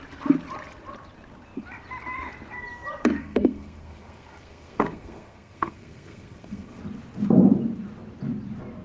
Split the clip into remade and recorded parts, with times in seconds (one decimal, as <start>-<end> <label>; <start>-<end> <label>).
0.0-3.2 recorded; 3.2-6.8 remade; 6.8-8.8 recorded